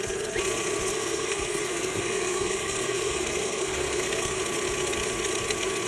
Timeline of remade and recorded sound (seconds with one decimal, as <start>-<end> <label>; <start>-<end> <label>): 0.0-0.9 recorded; 0.9-4.4 remade; 4.4-5.9 recorded